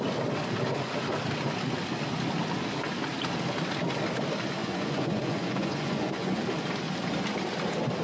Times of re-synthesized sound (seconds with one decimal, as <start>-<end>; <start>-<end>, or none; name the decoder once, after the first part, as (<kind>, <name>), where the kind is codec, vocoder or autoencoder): 4.6-6.4 (vocoder, Vocos)